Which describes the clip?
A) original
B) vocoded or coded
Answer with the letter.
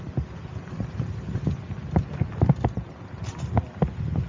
A